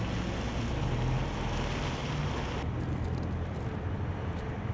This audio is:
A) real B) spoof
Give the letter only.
A